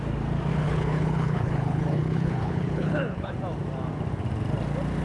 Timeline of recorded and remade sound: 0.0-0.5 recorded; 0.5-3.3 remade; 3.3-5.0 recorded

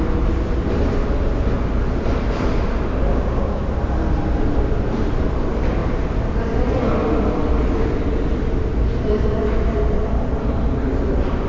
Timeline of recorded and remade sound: 0.0-3.1 recorded; 3.1-3.6 remade; 3.6-11.5 recorded

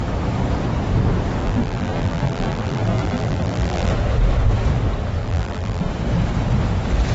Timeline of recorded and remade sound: 0.0-1.4 recorded; 1.4-3.9 remade; 3.9-5.2 recorded; 5.2-5.8 remade; 5.8-7.1 recorded

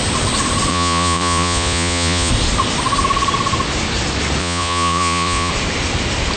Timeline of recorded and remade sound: 0.0-0.7 recorded; 0.7-2.3 remade; 2.3-4.4 recorded; 4.4-5.5 remade; 5.5-6.4 recorded

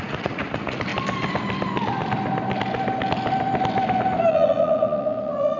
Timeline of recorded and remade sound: 0.0-0.9 remade; 0.9-4.3 recorded; 4.3-5.6 remade

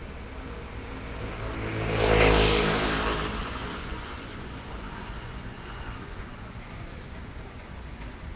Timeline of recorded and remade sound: 0.0-3.4 recorded; 3.4-8.4 remade

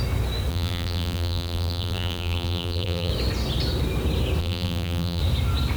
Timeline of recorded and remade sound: 0.0-0.5 recorded; 0.5-3.1 remade; 3.1-4.4 recorded; 4.4-5.2 remade; 5.2-5.8 recorded